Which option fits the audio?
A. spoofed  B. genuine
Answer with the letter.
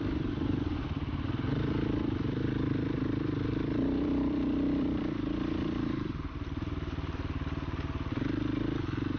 A